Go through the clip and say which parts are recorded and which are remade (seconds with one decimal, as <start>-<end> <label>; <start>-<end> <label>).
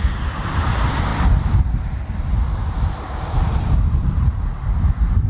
0.0-1.1 recorded; 1.1-3.8 remade; 3.8-5.3 recorded